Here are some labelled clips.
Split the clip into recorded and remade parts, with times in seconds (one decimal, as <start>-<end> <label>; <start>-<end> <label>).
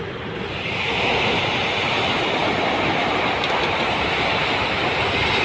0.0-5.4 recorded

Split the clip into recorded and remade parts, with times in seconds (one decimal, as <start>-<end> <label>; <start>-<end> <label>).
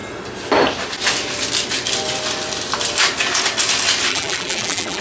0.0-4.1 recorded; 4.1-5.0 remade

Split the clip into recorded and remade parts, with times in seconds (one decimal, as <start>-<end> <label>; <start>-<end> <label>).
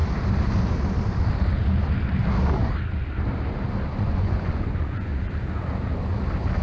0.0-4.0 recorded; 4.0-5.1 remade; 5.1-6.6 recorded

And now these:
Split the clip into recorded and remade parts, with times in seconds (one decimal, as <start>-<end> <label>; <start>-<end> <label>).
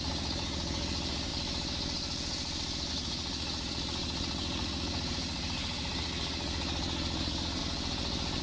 0.0-1.3 remade; 1.3-2.9 recorded; 2.9-7.6 remade; 7.6-8.4 recorded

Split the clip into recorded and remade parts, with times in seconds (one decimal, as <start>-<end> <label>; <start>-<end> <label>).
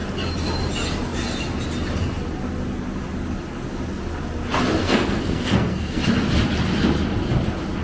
0.0-4.8 recorded; 4.8-6.0 remade; 6.0-7.8 recorded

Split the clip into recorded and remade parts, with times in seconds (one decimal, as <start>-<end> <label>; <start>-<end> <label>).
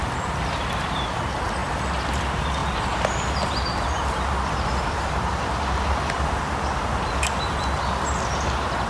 0.0-2.6 recorded; 2.6-6.5 remade; 6.5-8.9 recorded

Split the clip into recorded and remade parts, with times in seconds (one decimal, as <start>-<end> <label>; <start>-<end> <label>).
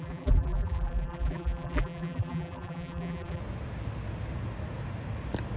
0.0-3.4 remade; 3.4-5.6 recorded